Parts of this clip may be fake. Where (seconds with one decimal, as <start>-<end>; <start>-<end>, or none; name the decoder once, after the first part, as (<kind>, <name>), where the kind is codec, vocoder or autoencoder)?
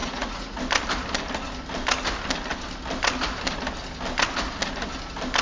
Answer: 0.0-0.6 (vocoder, Vocos)